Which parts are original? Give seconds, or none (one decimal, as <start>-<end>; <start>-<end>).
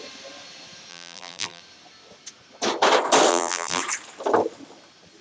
0.0-0.9; 1.6-3.3; 3.8-5.2